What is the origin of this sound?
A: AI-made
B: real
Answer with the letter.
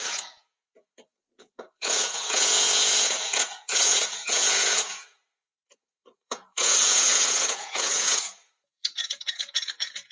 A